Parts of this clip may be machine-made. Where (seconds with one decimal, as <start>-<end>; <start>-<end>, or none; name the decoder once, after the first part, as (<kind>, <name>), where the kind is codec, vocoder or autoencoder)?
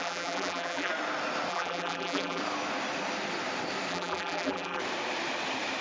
0.0-0.9 (vocoder, BigVGAN v2); 1.5-2.4; 3.9-4.8